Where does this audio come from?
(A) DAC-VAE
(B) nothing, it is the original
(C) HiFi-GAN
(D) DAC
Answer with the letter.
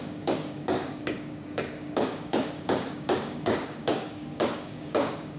D